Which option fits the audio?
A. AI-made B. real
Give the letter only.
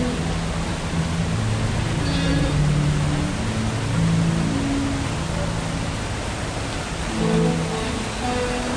B